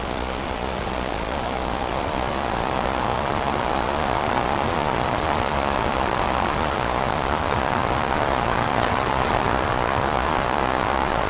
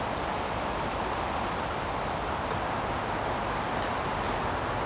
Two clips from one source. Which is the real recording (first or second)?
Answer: second